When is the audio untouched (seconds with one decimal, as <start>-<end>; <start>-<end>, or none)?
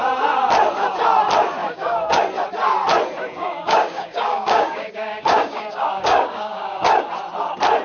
0.0-1.6; 2.2-3.4; 7.0-7.8